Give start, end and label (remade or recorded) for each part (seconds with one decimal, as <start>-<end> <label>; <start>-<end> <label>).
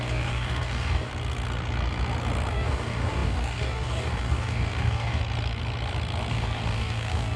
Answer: 0.0-1.1 remade; 1.1-2.5 recorded; 2.5-5.2 remade; 5.2-6.3 recorded; 6.3-7.4 remade